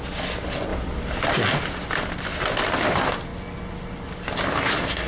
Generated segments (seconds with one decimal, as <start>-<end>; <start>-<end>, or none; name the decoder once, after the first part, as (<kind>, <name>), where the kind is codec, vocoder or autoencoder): none